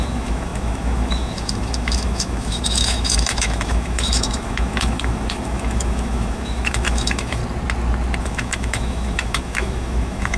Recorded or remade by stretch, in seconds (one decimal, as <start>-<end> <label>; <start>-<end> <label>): 0.0-7.4 remade; 7.4-8.2 recorded; 8.2-10.4 remade